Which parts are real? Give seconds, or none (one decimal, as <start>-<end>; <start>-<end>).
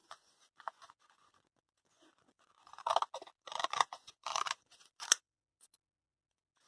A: 2.9-3.4